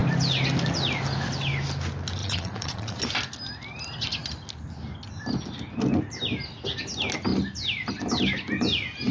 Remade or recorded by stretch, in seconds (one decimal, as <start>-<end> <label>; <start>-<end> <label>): 0.0-2.2 recorded; 2.2-3.0 remade; 3.0-9.1 recorded